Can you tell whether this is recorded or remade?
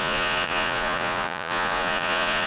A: remade